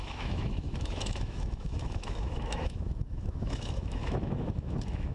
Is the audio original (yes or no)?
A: no